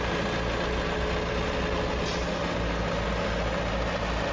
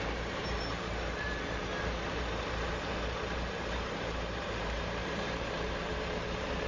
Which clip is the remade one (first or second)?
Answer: second